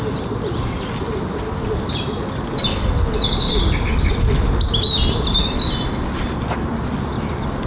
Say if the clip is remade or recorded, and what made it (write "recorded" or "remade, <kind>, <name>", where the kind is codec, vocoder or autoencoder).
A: recorded